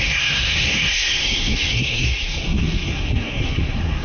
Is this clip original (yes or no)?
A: no